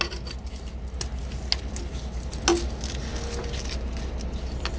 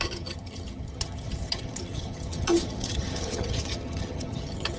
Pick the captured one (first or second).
first